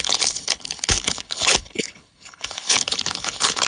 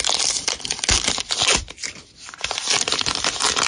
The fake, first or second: first